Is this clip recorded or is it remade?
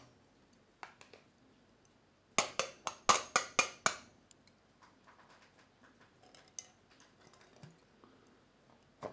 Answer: recorded